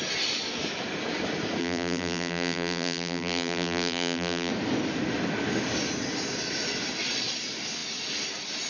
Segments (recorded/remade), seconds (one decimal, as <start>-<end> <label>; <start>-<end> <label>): 0.0-1.6 recorded; 1.6-4.5 remade; 4.5-8.7 recorded